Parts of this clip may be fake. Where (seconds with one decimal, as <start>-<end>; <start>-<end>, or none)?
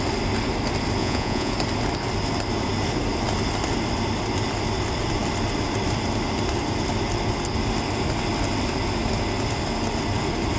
1.0-1.5